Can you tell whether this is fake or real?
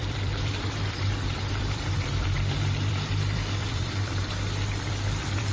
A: fake